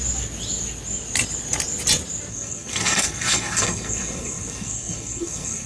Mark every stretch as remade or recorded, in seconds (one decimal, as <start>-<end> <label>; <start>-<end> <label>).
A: 0.0-2.3 recorded; 2.3-5.7 remade